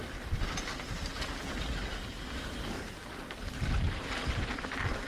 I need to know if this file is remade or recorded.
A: recorded